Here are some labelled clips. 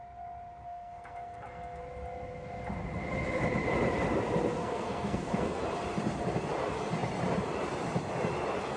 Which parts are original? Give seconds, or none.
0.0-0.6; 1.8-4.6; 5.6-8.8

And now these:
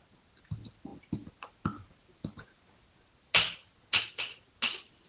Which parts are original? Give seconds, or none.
0.0-5.1

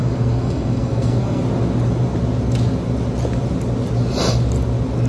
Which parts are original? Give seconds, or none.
1.4-5.1

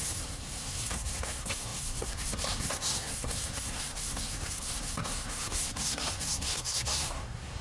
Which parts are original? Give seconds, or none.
none

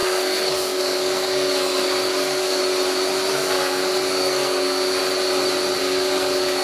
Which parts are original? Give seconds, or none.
2.6-3.3; 5.0-5.8

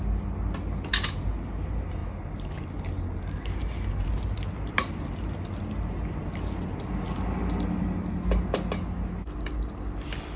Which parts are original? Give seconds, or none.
0.0-10.4

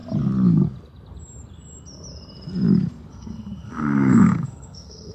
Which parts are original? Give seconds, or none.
0.0-3.1

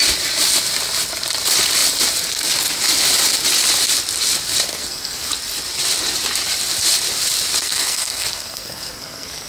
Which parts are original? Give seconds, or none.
0.0-4.7; 5.3-7.6